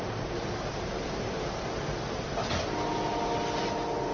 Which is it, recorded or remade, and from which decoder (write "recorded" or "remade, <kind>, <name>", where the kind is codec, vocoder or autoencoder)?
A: recorded